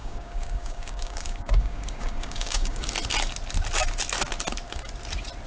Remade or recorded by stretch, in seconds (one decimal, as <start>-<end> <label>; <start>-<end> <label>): 0.0-2.9 remade; 2.9-5.5 recorded